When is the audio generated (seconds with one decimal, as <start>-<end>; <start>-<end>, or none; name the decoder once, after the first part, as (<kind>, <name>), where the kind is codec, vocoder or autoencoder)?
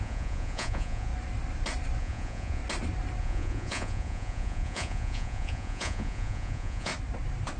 0.0-1.1 (vocoder, Vocos); 2.0-2.6; 3.2-6.9